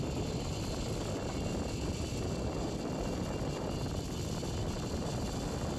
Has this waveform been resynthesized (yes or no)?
no